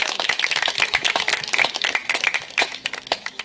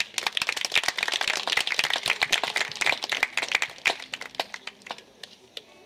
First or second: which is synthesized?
first